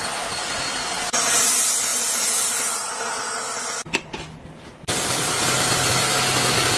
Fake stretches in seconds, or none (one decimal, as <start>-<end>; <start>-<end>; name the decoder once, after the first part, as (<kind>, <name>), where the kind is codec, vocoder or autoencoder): none